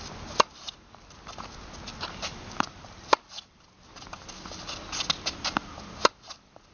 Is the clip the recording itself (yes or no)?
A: yes